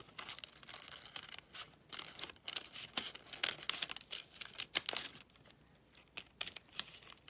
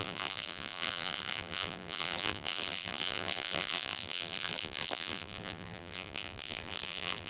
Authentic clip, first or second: first